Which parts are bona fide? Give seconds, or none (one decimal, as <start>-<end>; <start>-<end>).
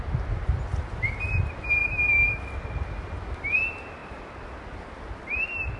0.0-1.8; 2.4-5.8